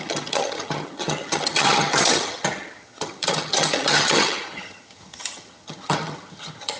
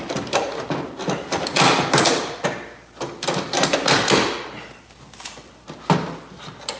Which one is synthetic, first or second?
first